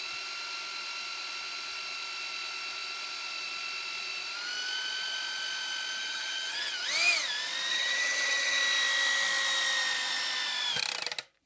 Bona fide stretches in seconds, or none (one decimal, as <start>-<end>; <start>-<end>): 0.0-6.0; 6.8-7.7; 8.6-11.5